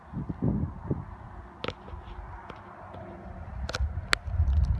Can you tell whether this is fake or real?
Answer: real